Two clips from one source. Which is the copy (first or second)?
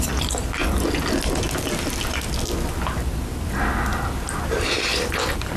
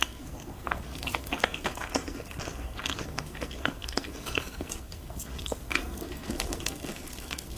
second